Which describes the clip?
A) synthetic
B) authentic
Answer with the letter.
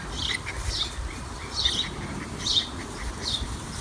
B